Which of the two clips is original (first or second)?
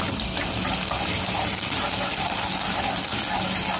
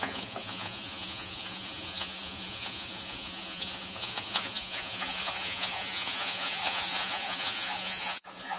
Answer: first